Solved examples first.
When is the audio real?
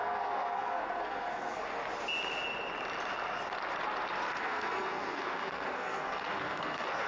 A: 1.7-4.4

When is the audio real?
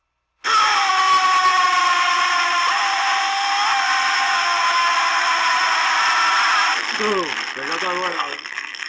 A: 0.0-8.1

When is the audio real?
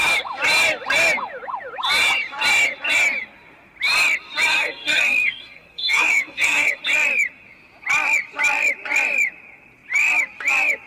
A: 0.0-4.5; 6.8-10.9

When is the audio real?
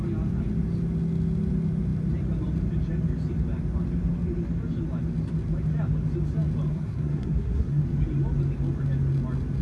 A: 0.0-6.7; 7.8-9.6